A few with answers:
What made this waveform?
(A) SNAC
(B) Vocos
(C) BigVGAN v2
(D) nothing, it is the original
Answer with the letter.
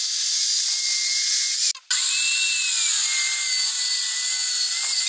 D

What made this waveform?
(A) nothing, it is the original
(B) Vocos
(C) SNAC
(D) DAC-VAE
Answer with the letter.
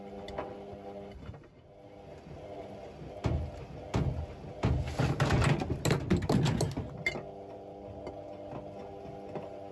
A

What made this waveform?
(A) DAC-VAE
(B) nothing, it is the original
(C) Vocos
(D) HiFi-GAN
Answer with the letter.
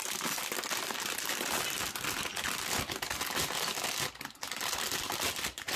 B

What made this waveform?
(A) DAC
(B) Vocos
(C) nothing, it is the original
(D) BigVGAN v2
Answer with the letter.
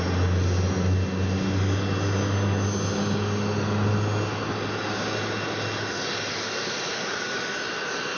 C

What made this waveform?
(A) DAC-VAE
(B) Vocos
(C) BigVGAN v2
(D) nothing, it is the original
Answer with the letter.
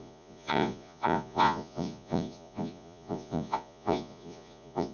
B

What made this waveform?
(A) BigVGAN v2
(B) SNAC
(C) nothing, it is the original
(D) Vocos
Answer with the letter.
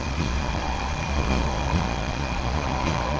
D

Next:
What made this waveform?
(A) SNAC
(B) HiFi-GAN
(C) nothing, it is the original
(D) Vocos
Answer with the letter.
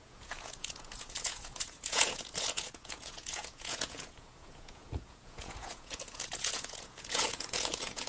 D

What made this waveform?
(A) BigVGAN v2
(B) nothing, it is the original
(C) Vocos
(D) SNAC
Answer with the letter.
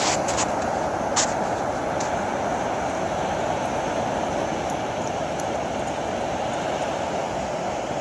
B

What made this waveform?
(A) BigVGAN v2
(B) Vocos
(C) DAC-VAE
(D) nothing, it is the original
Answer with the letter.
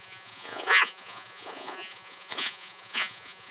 B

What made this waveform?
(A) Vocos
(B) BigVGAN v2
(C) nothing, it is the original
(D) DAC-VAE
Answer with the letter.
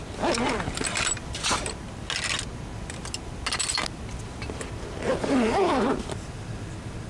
C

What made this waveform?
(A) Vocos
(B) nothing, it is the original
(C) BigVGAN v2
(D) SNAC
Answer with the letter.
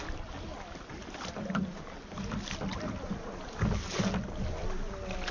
B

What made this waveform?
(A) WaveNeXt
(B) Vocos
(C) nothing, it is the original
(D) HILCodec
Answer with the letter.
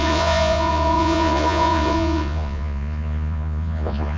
B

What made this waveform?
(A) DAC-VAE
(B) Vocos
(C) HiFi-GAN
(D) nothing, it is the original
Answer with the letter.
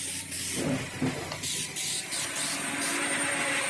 D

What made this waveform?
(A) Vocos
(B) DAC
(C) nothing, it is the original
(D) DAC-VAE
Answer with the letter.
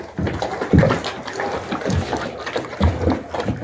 C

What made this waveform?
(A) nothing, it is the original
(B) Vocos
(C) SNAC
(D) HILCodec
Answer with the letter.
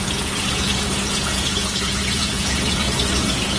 B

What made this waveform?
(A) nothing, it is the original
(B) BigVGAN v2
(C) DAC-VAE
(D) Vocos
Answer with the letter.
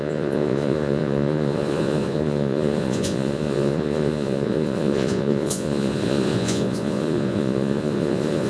D